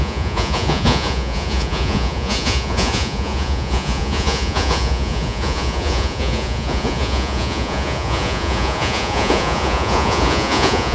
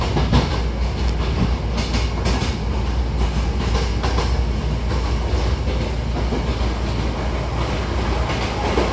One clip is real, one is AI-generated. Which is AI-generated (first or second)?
first